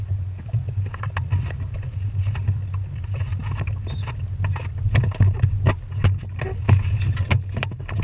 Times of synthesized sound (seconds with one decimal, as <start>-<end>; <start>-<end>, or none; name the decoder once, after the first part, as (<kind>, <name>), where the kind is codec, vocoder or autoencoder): none